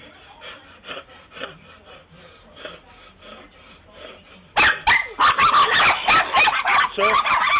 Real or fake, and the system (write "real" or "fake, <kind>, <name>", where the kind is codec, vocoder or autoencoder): real